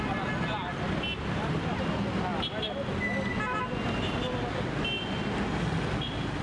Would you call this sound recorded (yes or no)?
yes